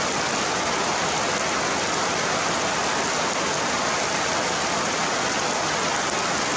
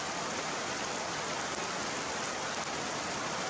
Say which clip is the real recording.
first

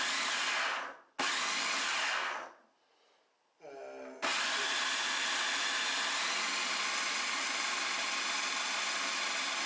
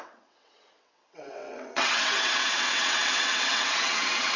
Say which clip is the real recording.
first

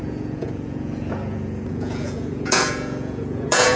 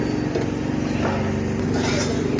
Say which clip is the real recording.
second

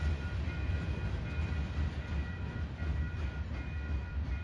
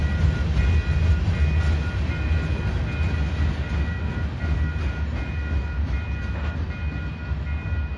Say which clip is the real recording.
second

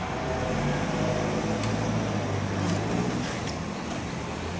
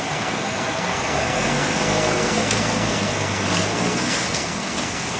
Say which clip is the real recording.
first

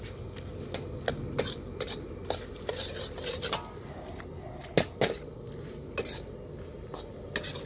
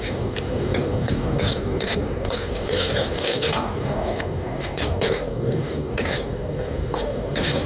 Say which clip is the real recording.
first